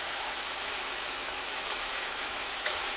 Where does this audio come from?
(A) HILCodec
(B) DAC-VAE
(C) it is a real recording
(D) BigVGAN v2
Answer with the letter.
B